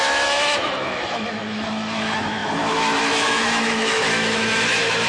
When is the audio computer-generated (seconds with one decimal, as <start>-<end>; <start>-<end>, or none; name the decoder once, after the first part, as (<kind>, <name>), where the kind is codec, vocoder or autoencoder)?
0.0-5.1 (autoencoder, DAC-VAE)